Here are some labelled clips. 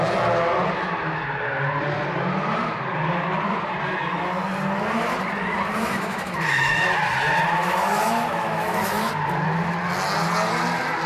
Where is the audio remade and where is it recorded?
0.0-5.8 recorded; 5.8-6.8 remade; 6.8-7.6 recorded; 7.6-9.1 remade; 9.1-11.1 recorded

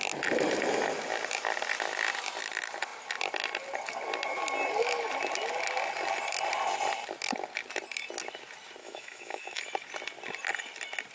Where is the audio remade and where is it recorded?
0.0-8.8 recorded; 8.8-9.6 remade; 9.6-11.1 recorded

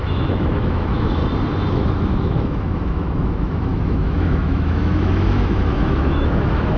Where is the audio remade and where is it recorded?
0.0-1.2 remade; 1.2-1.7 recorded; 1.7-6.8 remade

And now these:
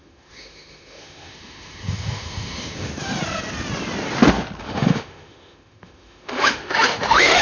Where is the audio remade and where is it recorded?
0.0-2.9 remade; 2.9-4.6 recorded; 4.6-7.4 remade

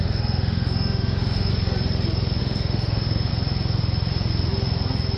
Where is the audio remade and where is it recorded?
0.0-1.5 remade; 1.5-2.4 recorded; 2.4-3.3 remade; 3.3-5.2 recorded

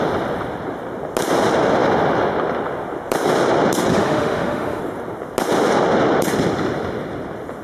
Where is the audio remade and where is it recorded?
0.0-3.9 recorded; 3.9-4.8 remade; 4.8-7.6 recorded

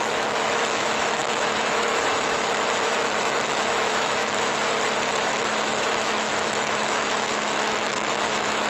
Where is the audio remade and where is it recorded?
0.0-4.5 remade; 4.5-5.3 recorded; 5.3-8.7 remade